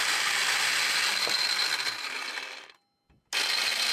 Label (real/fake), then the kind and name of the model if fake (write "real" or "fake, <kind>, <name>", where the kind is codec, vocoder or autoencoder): real